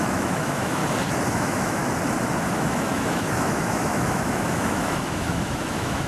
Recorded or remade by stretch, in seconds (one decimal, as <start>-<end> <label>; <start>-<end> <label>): 0.0-0.8 remade; 0.8-1.3 recorded; 1.3-1.8 remade; 1.8-2.5 recorded; 2.5-6.1 remade